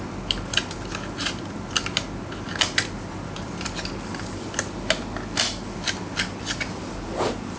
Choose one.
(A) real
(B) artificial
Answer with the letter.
A